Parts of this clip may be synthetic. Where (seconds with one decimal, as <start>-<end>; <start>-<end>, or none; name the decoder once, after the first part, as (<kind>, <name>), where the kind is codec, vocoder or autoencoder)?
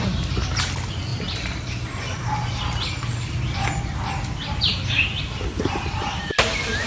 none